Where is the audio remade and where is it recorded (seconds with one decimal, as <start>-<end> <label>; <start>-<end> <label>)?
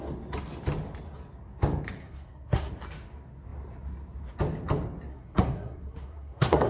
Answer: 0.0-2.0 recorded; 2.0-2.7 remade; 2.7-5.1 recorded; 5.1-6.7 remade